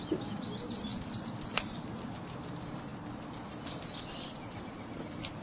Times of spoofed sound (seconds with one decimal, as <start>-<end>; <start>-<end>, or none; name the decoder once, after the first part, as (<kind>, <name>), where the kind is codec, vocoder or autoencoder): 0.9-1.8 (vocoder, BigVGAN v2)